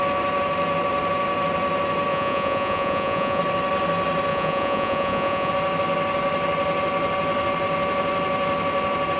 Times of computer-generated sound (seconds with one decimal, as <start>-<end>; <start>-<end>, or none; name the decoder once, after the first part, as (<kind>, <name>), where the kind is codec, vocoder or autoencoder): 2.1-3.4 (vocoder, Vocos); 4.3-5.5